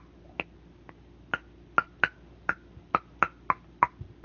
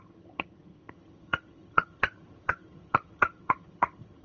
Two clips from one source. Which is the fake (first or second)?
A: second